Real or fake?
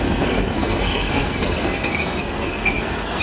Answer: fake